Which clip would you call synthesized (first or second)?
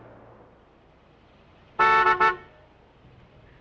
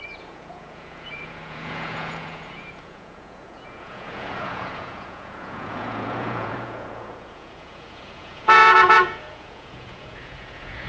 second